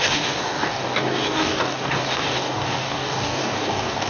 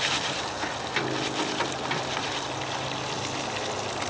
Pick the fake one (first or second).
first